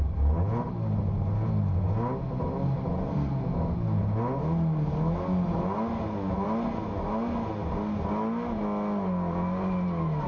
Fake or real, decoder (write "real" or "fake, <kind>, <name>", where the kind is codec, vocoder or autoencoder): real